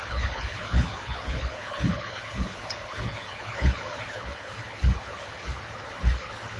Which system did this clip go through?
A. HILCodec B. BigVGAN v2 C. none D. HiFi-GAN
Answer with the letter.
A